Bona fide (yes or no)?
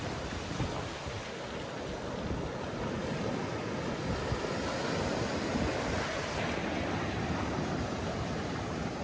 yes